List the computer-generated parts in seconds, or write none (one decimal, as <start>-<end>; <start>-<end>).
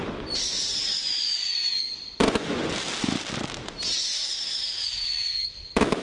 0.9-2.7